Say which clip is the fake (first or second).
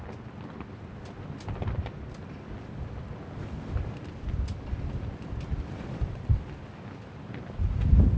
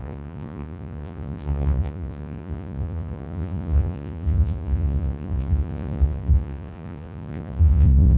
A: second